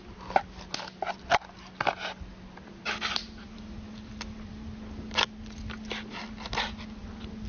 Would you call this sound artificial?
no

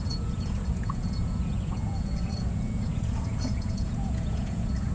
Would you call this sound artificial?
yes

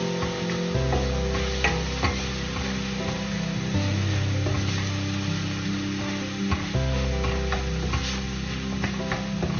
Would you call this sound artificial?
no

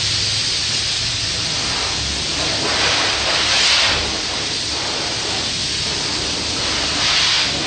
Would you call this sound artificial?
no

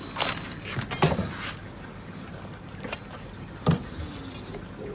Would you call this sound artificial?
no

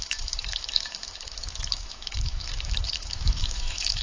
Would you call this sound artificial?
yes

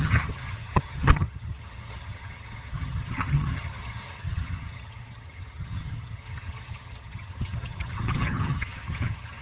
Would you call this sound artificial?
yes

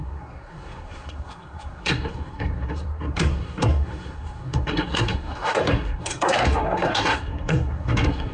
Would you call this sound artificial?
yes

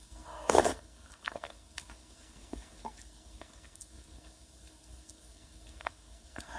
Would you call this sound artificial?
yes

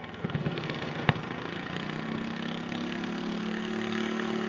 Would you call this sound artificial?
yes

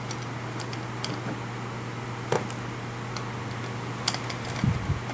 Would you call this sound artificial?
no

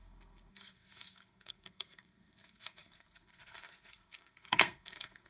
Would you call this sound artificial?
yes